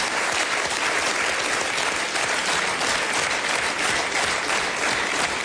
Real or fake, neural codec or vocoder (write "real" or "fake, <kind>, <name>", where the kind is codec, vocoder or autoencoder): real